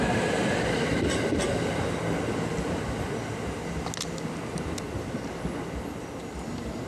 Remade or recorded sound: recorded